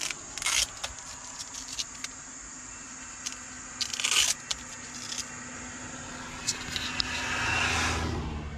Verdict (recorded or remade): recorded